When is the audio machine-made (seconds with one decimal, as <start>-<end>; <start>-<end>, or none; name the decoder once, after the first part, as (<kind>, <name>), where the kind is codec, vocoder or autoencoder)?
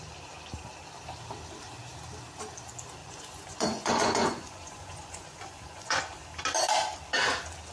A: 3.0-6.0 (vocoder, Vocos)